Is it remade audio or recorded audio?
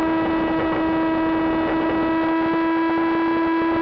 recorded